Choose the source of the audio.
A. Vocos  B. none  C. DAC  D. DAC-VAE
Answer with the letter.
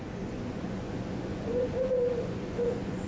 A